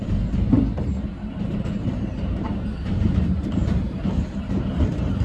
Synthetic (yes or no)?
yes